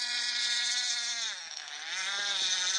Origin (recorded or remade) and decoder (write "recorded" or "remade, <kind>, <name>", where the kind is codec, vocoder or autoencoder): remade, vocoder, BigVGAN v2